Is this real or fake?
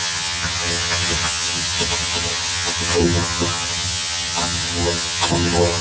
fake